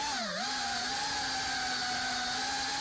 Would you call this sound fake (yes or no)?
no